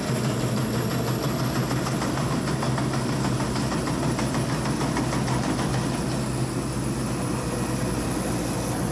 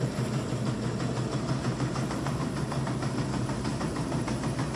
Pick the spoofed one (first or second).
second